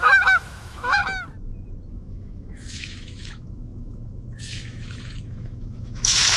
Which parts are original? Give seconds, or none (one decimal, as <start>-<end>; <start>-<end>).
1.0-1.9